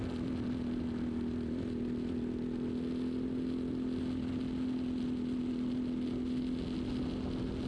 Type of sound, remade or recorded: recorded